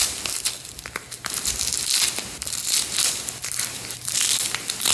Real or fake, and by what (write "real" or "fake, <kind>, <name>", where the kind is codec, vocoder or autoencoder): real